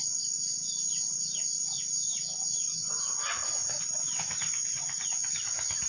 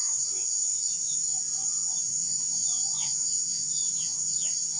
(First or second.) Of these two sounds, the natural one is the first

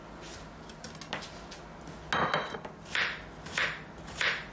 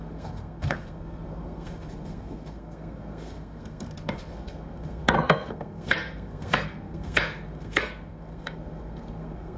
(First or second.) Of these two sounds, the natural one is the first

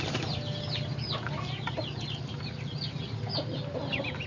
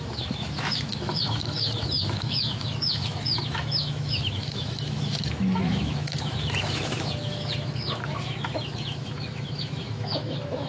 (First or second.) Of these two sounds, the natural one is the first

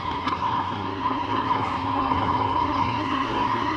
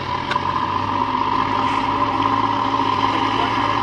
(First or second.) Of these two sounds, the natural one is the second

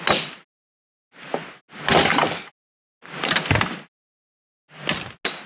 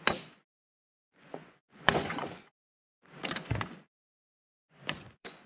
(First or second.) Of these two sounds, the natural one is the first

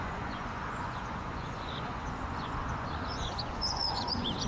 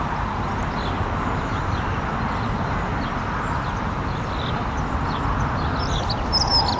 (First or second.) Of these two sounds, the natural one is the second